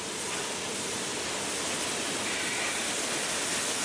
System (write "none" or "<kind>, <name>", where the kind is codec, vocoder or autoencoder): none